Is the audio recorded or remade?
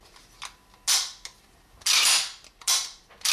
recorded